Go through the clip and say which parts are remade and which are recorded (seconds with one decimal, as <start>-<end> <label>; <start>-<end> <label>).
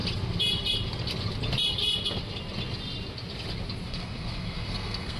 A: 0.0-3.9 recorded; 3.9-5.2 remade